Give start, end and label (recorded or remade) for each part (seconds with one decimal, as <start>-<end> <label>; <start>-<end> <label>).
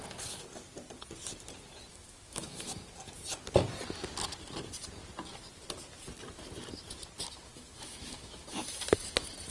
0.0-1.9 recorded; 1.9-2.7 remade; 2.7-7.5 recorded; 7.5-8.6 remade; 8.6-9.5 recorded